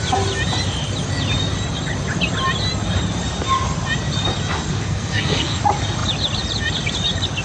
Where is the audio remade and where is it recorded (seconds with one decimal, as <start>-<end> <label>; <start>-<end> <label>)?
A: 0.0-4.7 recorded; 4.7-5.6 remade; 5.6-7.4 recorded